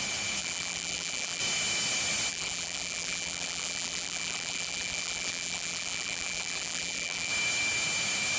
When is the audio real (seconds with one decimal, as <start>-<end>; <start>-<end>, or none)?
0.0-0.4; 1.4-2.3; 7.3-8.4

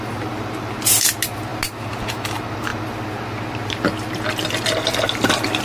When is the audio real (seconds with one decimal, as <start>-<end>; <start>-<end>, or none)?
0.0-5.6

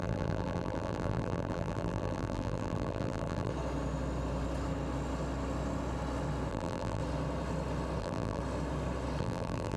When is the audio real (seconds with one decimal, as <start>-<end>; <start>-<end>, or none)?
3.5-6.5; 7.0-8.0; 8.4-9.2

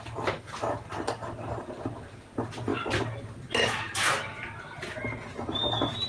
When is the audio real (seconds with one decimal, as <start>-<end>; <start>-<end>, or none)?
0.0-6.1

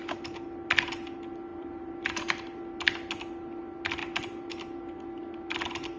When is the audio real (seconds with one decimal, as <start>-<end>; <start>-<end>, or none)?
0.0-1.5; 2.6-4.0; 4.5-6.0

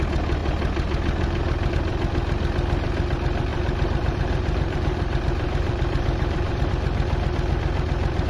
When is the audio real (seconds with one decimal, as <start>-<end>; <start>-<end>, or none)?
0.0-3.5; 6.7-8.3

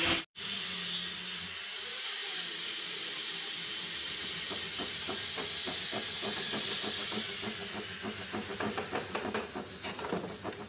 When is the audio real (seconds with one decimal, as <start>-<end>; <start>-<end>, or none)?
0.0-2.2; 5.8-10.7

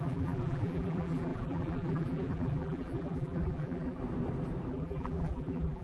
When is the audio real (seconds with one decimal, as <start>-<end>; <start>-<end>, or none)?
4.0-4.7